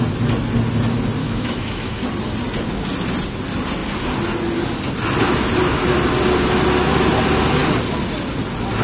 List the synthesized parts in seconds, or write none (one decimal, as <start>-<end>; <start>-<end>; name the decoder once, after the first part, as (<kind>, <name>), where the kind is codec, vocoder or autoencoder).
1.2-2.0 (autoencoder, DAC-VAE)